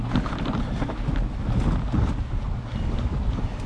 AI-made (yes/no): no